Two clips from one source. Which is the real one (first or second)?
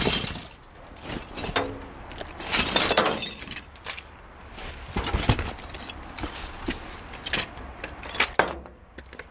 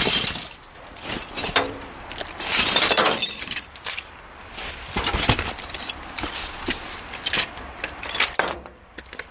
first